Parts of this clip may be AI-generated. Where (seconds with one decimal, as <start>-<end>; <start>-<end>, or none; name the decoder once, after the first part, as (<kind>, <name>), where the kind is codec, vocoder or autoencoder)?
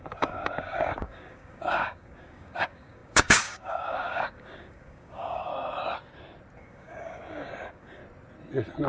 0.0-5.5 (codec, DAC); 6.6-8.0